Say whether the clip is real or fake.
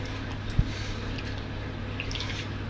real